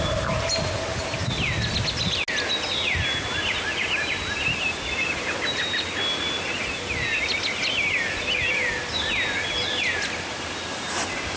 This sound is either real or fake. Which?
real